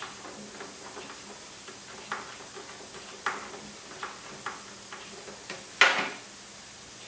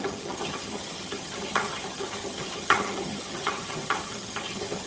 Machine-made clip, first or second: second